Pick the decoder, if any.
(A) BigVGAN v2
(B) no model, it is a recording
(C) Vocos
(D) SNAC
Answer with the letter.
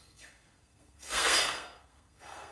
D